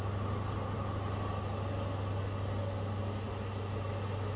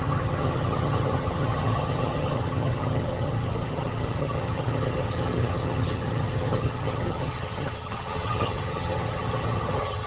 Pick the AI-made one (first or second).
second